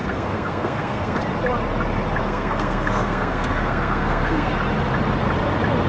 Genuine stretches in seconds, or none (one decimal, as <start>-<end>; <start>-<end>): 1.2-2.2; 4.5-5.9